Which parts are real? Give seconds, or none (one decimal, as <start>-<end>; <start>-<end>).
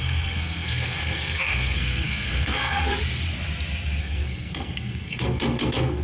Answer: 2.9-4.0